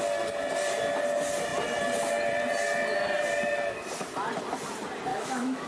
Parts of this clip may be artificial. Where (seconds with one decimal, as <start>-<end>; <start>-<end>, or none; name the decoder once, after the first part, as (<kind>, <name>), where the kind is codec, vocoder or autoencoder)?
5.1-5.7 (autoencoder, DAC-VAE)